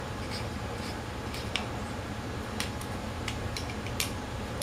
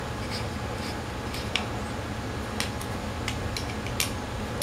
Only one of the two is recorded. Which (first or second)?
second